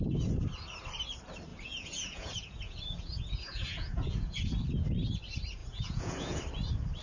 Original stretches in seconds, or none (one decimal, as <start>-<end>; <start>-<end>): 0.0-1.5; 4.4-5.6; 6.4-7.0